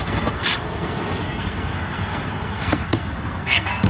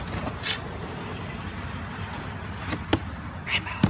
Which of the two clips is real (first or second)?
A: second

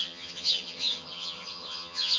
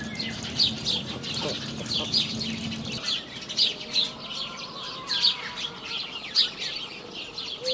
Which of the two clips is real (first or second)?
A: second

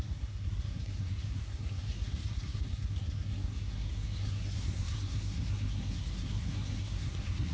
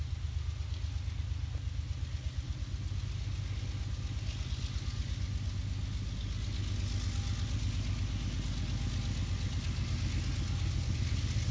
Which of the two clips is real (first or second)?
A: second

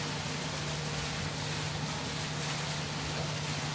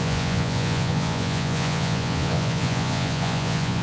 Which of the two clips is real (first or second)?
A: first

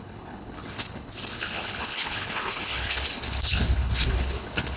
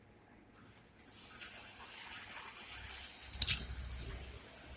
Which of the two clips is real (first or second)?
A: second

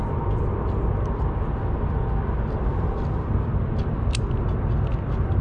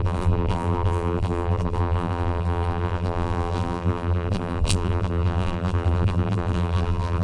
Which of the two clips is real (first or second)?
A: first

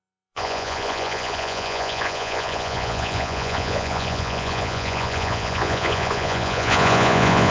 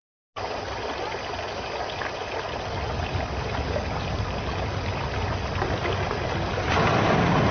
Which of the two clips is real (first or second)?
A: second